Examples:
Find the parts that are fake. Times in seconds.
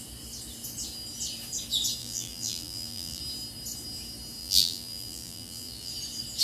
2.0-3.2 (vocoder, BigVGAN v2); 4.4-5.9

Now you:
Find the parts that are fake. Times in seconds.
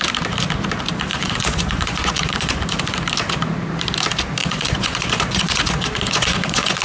1.1-2.6 (vocoder, Vocos); 4.4-6.8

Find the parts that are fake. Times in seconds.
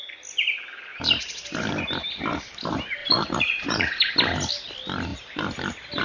3.0-4.1 (vocoder, Vocos)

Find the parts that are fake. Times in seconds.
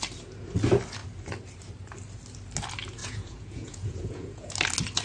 3.0-4.5 (vocoder, Vocos)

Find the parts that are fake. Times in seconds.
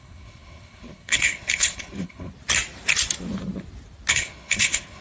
0.0-2.3 (codec, HILCodec); 4.1-5.0